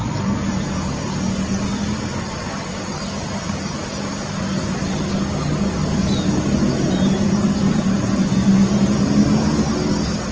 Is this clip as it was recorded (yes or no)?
yes